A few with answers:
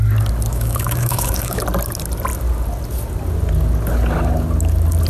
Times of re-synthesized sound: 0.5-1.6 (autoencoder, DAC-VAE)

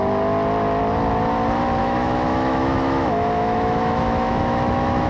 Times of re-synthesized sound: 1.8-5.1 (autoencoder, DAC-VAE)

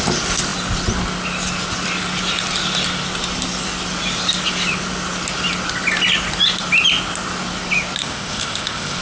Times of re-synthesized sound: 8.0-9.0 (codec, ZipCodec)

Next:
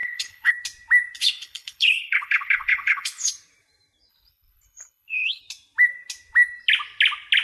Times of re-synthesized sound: 0.0-0.5 (codec, HILCodec); 1.2-3.3; 4.1-5.4